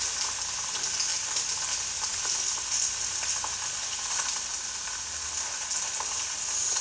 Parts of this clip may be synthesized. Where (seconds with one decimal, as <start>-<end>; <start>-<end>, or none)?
none